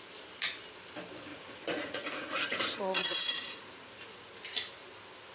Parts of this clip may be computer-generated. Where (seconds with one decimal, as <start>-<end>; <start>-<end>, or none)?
1.3-4.3

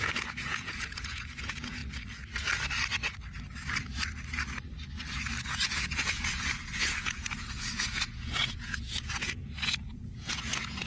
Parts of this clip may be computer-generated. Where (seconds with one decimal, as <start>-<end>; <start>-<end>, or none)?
0.0-1.8; 5.4-10.9

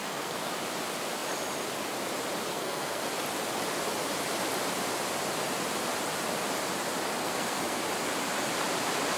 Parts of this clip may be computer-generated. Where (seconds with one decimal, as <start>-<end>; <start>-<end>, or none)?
0.0-0.5; 2.5-3.1; 7.2-7.8

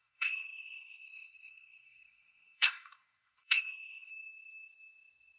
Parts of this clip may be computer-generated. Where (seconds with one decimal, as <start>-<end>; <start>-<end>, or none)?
0.0-4.1

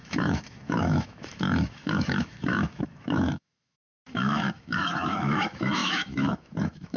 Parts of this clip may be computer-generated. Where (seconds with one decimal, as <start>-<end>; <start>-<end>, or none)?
0.0-7.0

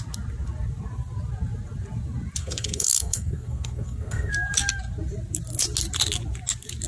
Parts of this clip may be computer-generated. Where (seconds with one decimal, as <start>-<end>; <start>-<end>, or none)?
2.4-4.3